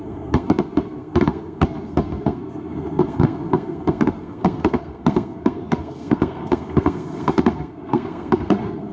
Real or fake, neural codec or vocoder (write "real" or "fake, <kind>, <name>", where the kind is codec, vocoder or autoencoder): fake, codec, SNAC